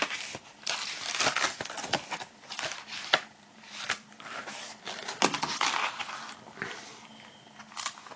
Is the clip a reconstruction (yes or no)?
no